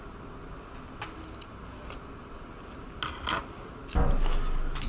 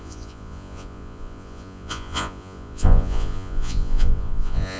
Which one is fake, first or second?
second